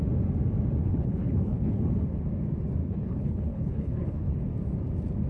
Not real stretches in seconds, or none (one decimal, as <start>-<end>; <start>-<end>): 0.8-2.0; 2.8-4.4